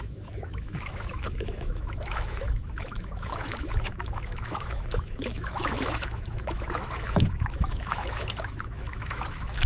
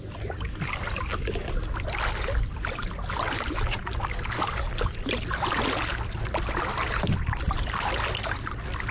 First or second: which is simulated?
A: first